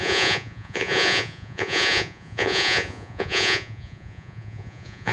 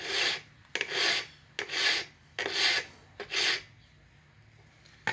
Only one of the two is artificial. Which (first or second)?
first